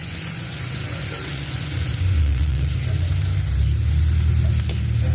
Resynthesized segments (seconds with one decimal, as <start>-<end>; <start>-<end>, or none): 0.0-3.1